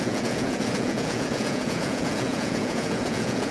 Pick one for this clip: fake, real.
fake